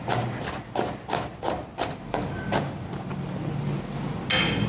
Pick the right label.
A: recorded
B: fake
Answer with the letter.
A